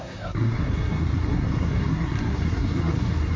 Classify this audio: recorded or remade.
remade